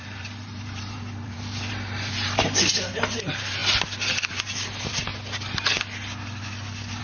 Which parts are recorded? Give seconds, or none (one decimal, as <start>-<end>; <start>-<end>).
3.6-4.3; 5.1-7.0